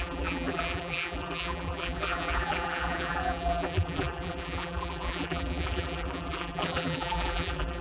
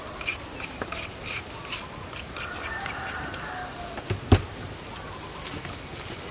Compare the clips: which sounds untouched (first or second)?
second